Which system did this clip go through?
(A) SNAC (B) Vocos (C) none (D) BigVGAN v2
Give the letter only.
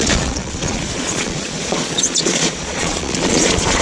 B